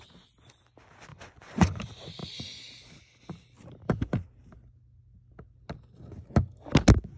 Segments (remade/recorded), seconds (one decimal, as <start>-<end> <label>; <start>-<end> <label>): 0.0-1.1 recorded; 1.1-1.8 remade; 1.8-7.2 recorded